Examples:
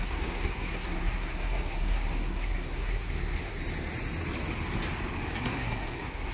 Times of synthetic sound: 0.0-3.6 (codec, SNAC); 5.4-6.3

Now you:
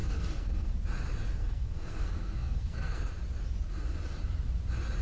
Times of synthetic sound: 0.0-0.7 (codec, SNAC); 1.4-3.1

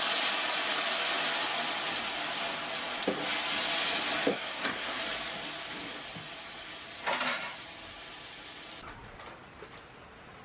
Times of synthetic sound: 4.3-5.0 (codec, SNAC)

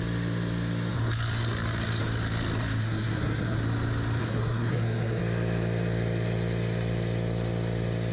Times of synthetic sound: 2.8-3.6 (codec, SNAC); 4.2-5.2

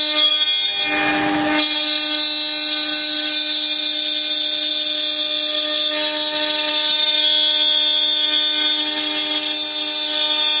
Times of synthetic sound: none

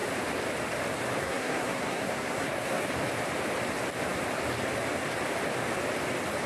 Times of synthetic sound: 1.2-2.9 (codec, SNAC)

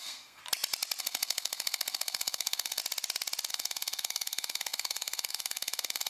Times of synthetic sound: 0.0-0.4 (codec, SNAC); 1.0-2.8; 3.5-6.1

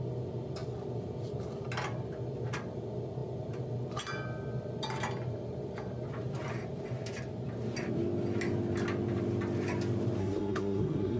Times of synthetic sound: 10.2-11.2 (codec, SNAC)